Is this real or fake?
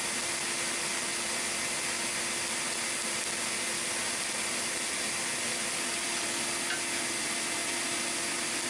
real